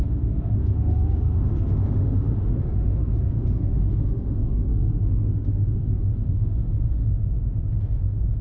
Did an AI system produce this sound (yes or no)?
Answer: yes